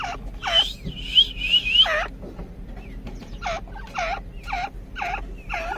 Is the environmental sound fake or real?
real